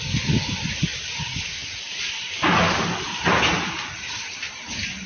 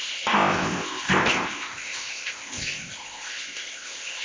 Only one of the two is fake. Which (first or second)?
second